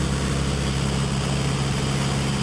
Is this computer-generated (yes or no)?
no